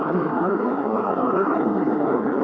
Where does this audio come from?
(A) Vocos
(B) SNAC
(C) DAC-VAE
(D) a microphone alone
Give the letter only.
B